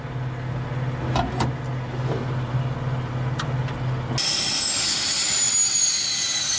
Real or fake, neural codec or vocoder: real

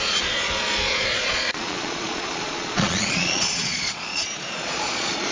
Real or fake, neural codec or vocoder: fake, vocoder, Vocos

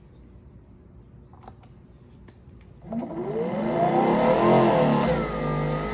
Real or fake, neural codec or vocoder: real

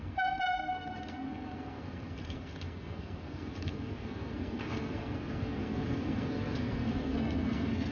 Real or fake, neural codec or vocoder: fake, codec, SNAC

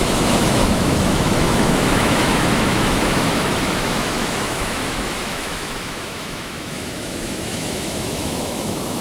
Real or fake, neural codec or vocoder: fake, autoencoder, DAC-VAE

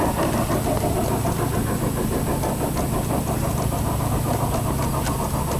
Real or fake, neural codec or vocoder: real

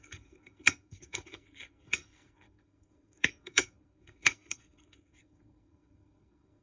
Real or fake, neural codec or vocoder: fake, codec, SNAC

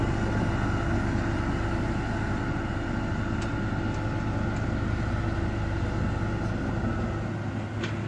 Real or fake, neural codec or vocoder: real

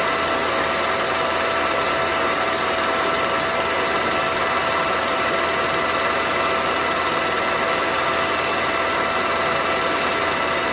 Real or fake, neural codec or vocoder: real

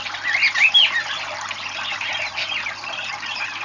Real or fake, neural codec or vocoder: real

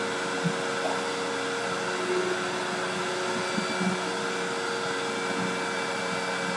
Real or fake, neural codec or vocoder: real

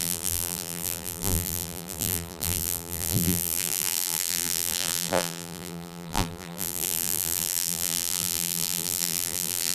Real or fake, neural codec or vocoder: fake, vocoder, BigVGAN v2